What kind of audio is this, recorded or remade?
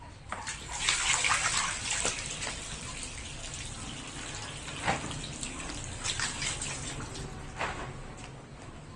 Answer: recorded